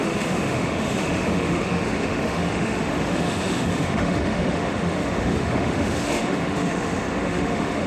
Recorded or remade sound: remade